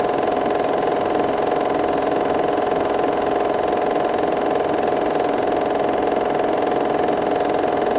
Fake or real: real